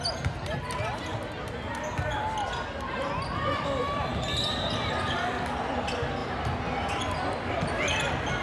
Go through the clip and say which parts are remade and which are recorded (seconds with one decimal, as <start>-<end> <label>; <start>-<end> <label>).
0.0-6.2 recorded; 6.2-7.0 remade; 7.0-8.4 recorded